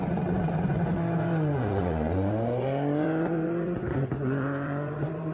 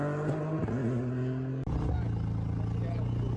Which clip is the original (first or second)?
second